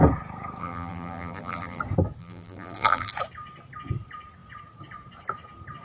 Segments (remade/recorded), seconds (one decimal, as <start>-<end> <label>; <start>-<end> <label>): 0.0-0.6 recorded; 0.6-1.8 remade; 1.8-2.2 recorded; 2.2-3.1 remade; 3.1-5.8 recorded